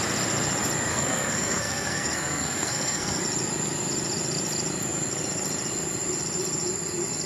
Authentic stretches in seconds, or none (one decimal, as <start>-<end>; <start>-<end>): 0.0-0.9; 3.2-7.3